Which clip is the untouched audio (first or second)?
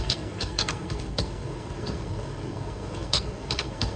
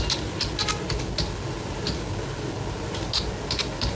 second